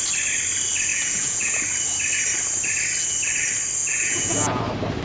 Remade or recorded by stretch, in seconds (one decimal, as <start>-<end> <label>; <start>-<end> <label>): 0.0-0.9 recorded; 0.9-1.6 remade; 1.6-3.8 recorded; 3.8-4.6 remade; 4.6-5.0 recorded

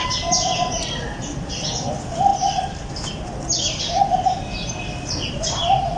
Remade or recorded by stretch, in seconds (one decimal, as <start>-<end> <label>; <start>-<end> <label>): 0.0-6.0 recorded